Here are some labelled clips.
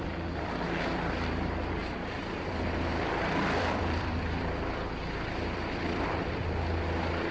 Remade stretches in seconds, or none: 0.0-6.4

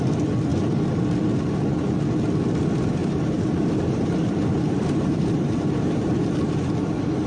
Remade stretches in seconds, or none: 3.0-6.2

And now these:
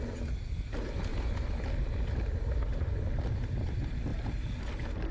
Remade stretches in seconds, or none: 1.1-2.3